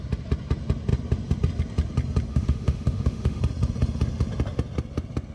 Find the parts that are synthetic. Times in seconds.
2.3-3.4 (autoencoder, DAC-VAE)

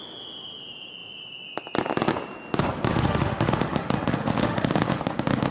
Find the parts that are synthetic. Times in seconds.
2.9-5.0 (autoencoder, DAC-VAE)

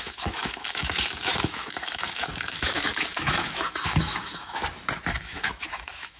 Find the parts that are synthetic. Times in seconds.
0.0-4.6 (autoencoder, DAC-VAE); 5.2-6.2

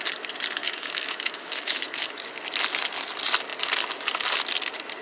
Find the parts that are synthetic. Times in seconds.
0.6-2.2 (autoencoder, DAC-VAE)

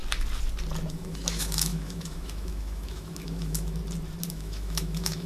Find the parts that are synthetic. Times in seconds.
0.9-3.8 (autoencoder, DAC-VAE); 4.3-5.3